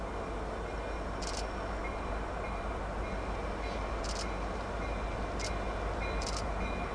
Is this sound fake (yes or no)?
no